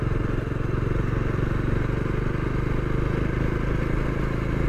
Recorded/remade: recorded